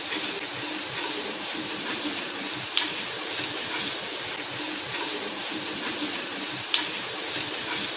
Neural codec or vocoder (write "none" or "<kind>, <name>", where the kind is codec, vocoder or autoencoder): none